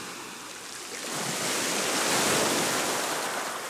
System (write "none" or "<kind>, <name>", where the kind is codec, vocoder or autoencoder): none